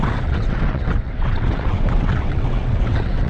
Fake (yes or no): yes